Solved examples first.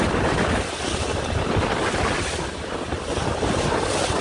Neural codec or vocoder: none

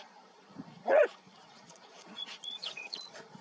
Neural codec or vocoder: vocoder, Vocos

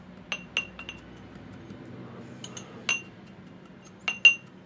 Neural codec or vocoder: none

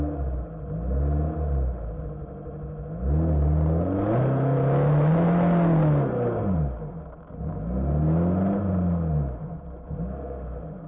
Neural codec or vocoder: none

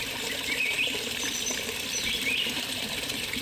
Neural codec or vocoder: vocoder, BigVGAN v2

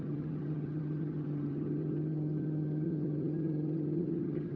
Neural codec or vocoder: vocoder, HiFi-GAN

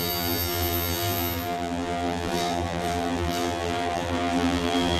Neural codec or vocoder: vocoder, BigVGAN v2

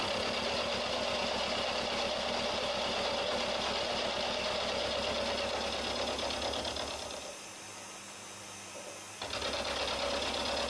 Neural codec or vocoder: none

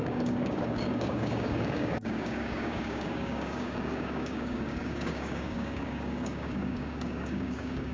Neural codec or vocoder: codec, DAC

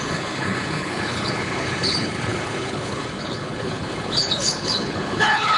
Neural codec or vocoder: codec, HILCodec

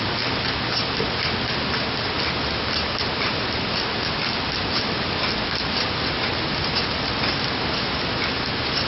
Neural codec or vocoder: none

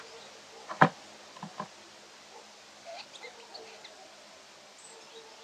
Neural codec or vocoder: none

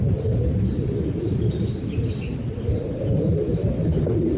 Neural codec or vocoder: vocoder, BigVGAN v2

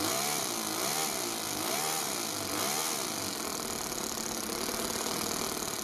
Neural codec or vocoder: none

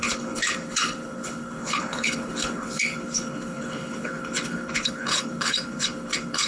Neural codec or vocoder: codec, HILCodec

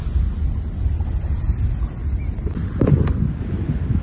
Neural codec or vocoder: none